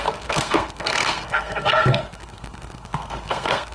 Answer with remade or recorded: remade